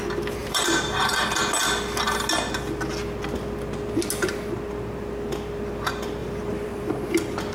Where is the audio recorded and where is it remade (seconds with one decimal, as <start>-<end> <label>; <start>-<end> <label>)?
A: 0.0-0.4 recorded; 0.4-1.3 remade; 1.3-6.2 recorded; 6.2-6.9 remade; 6.9-7.5 recorded